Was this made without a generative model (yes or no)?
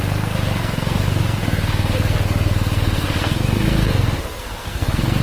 no